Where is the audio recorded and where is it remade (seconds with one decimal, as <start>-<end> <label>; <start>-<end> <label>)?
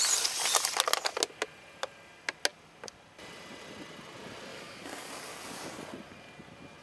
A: 0.0-4.5 recorded; 4.5-5.1 remade; 5.1-6.8 recorded